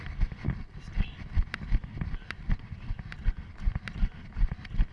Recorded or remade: recorded